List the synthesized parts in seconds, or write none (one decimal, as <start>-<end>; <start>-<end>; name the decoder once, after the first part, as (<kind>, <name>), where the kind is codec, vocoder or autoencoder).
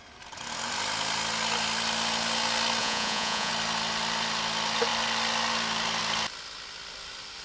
2.8-3.5 (vocoder, Vocos)